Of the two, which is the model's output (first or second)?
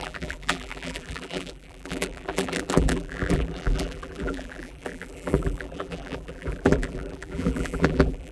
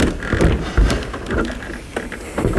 first